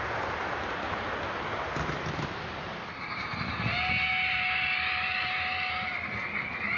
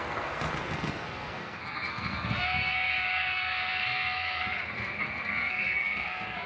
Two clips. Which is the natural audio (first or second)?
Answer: first